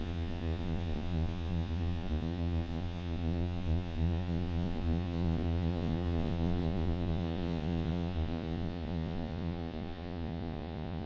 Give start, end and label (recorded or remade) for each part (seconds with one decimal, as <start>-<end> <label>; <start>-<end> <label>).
0.0-11.1 remade

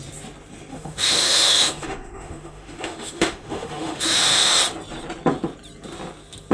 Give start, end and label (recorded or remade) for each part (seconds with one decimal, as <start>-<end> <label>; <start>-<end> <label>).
0.0-0.7 recorded; 0.7-4.6 remade; 4.6-6.5 recorded

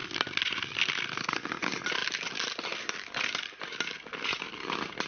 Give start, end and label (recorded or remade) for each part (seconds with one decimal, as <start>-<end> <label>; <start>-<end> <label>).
0.0-5.1 recorded

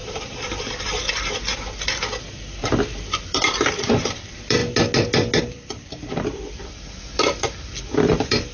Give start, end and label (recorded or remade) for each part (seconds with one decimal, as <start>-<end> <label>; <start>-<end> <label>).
0.0-4.6 remade; 4.6-5.4 recorded; 5.4-8.5 remade

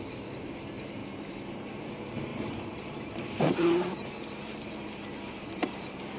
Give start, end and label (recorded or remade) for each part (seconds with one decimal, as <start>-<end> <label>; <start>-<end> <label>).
0.0-1.0 recorded; 1.0-1.9 remade; 1.9-2.3 recorded; 2.3-6.2 remade

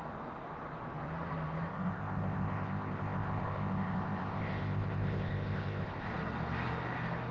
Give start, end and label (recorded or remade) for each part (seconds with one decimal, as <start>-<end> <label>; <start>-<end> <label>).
0.0-1.7 recorded; 1.7-6.1 remade; 6.1-7.3 recorded